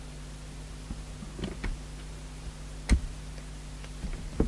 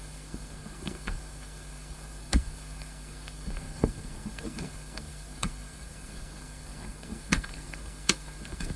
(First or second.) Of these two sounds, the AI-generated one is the second